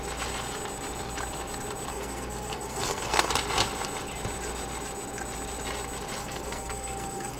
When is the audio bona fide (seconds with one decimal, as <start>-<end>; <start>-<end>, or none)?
0.0-1.9; 3.3-6.2